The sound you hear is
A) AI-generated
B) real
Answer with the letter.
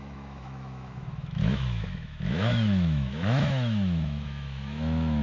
A